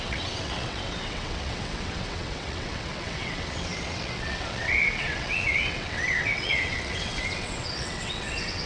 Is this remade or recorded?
remade